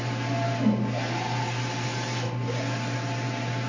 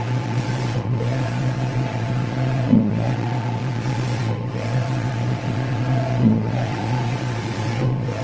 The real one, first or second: first